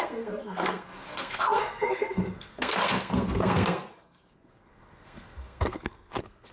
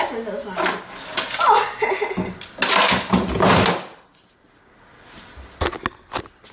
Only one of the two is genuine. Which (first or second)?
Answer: second